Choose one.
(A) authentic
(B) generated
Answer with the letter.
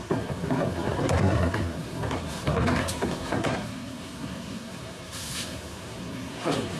B